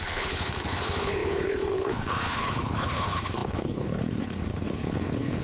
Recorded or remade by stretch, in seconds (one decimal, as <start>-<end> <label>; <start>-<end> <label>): 0.0-5.4 remade